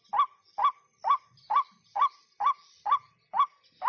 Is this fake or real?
real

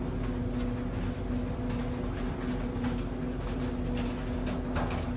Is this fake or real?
real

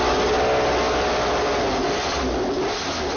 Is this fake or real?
real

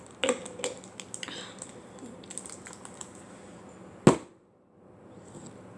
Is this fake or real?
real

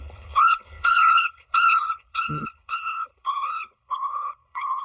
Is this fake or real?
fake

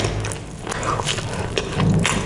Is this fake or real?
real